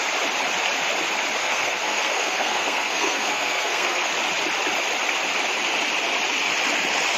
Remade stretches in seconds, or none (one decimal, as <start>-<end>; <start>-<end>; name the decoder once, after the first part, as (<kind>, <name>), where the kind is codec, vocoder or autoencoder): 1.4-4.1 (codec, SNAC)

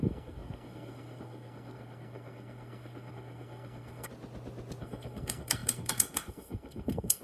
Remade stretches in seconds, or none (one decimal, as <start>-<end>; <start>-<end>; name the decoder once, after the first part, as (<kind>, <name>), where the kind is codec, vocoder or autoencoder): 0.0-4.1 (codec, SNAC); 4.8-7.2

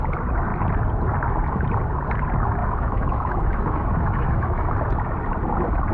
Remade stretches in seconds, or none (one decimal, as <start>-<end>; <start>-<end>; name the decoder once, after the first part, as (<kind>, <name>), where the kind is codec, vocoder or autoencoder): 2.6-4.7 (autoencoder, DAC-VAE)

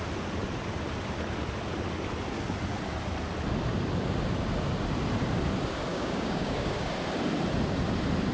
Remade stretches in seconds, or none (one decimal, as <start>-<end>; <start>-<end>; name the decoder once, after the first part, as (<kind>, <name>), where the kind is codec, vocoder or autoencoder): 5.9-6.9 (codec, DAC)